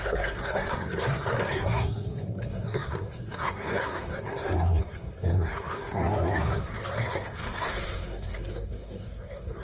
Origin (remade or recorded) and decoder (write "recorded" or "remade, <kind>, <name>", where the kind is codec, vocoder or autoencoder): remade, codec, SNAC